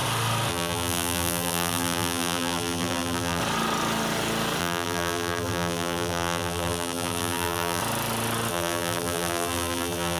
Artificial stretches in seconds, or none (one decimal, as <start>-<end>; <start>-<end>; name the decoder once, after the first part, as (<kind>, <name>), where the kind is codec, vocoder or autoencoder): 0.5-3.4 (vocoder, BigVGAN v2); 4.6-7.8; 8.5-10.2